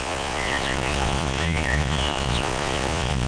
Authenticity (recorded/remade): remade